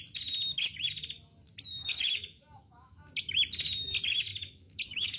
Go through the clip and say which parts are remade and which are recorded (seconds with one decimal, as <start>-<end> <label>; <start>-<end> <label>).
0.0-1.7 recorded; 1.7-3.1 remade; 3.1-4.3 recorded; 4.3-5.2 remade